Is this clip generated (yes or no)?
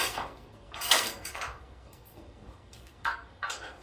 yes